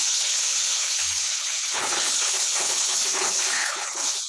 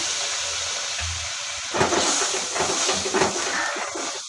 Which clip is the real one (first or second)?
second